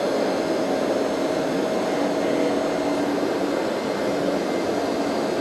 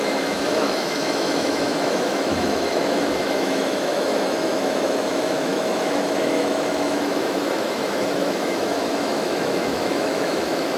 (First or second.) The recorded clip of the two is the first